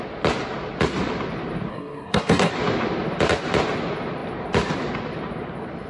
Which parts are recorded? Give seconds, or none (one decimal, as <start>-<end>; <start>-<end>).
0.0-1.7; 2.5-5.9